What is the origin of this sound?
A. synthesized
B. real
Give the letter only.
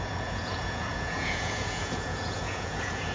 A